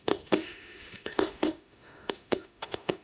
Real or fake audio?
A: fake